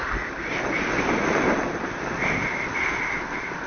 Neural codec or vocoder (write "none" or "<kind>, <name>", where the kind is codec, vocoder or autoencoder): none